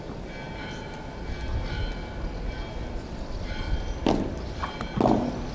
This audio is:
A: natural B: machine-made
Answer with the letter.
A